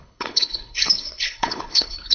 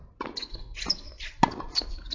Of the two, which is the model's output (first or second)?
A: first